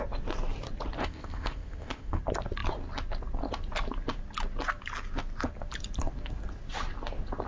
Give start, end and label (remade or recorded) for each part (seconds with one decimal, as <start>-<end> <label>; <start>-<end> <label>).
0.0-1.0 recorded; 1.0-2.2 remade; 2.2-7.5 recorded